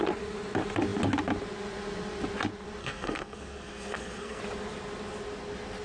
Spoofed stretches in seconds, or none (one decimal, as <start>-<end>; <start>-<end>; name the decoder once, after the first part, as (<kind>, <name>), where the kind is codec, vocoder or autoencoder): 2.8-4.4 (codec, SNAC)